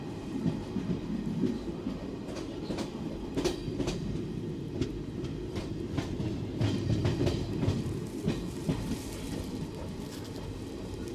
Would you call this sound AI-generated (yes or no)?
no